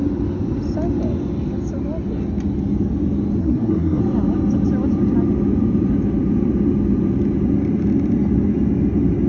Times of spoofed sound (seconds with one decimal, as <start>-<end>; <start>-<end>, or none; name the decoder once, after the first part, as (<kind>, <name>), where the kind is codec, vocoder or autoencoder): 3.4-4.0 (codec, SNAC)